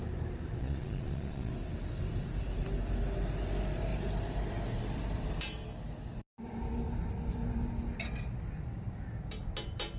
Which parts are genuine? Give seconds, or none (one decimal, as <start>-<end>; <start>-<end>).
0.0-0.6; 1.5-10.0